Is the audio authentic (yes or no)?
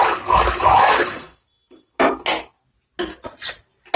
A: yes